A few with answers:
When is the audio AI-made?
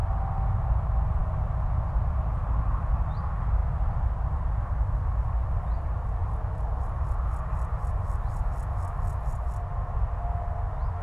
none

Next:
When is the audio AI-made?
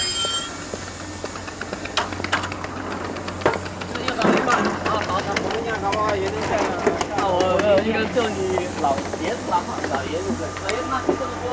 none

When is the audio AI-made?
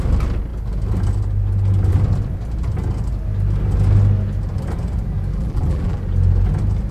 5.3-6.0 (vocoder, BigVGAN v2)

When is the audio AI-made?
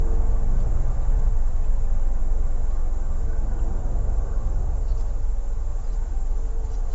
0.5-1.3 (vocoder, Vocos); 5.7-6.9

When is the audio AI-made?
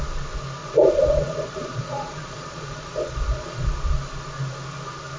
0.6-3.7 (vocoder, Vocos)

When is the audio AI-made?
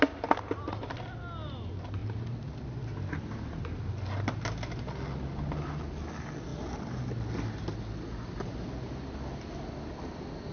none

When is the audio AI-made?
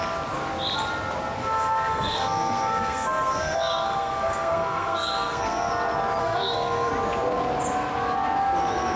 1.4-5.7 (codec, SNAC); 6.2-6.9